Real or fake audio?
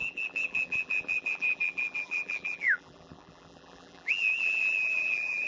fake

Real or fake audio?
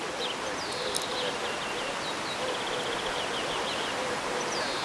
real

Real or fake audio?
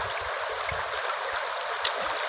real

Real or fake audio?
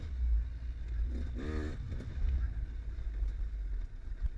real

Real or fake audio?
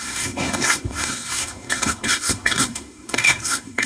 fake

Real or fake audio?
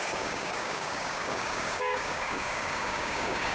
fake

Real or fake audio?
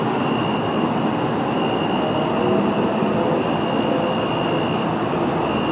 real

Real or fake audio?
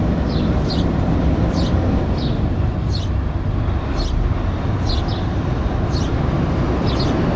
real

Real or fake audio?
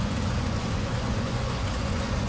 fake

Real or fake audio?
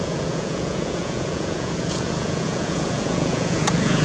fake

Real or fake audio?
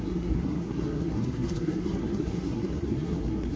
fake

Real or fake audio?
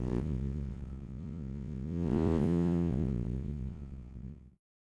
fake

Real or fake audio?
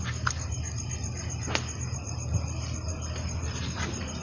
real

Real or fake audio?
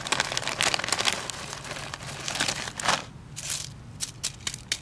real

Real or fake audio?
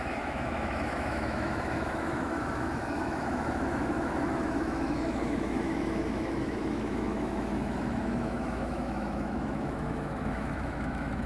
fake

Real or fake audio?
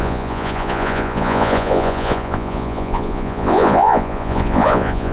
fake